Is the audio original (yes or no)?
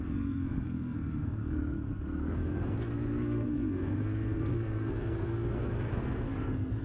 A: no